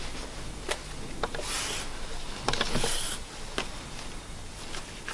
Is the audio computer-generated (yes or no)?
no